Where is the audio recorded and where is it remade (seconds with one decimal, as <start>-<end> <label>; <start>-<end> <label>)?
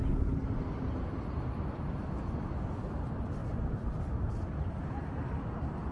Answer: 0.0-3.4 recorded; 3.4-4.0 remade; 4.0-5.9 recorded